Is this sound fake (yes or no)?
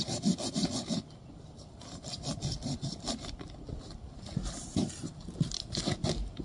no